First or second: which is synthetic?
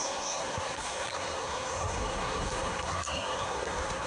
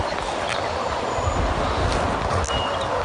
first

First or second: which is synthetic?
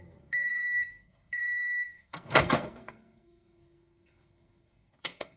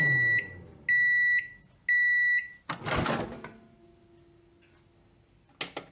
first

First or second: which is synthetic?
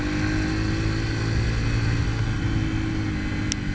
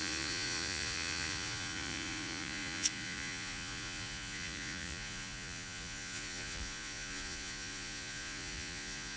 second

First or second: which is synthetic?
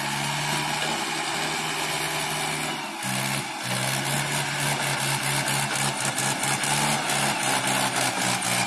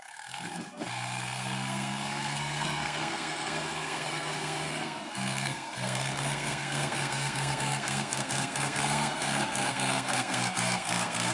second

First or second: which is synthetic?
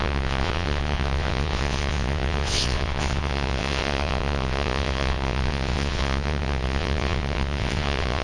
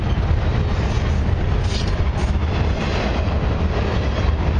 first